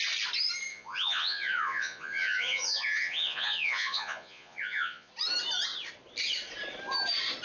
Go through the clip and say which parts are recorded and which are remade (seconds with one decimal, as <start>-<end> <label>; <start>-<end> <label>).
0.0-0.7 recorded; 0.7-5.1 remade; 5.1-7.4 recorded